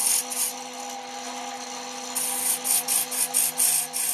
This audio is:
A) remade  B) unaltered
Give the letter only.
B